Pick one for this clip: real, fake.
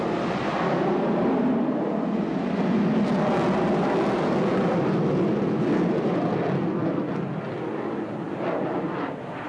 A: real